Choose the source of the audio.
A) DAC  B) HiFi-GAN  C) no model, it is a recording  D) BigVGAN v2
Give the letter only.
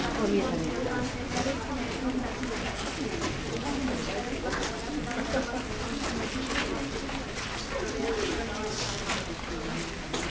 C